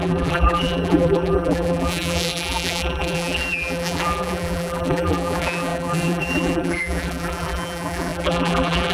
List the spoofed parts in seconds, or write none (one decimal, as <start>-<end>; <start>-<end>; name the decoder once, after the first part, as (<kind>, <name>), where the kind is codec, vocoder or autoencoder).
0.0-8.9 (vocoder, BigVGAN v2)